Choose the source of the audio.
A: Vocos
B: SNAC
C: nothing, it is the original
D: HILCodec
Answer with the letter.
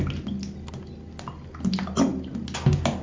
C